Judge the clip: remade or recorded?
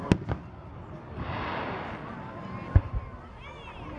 recorded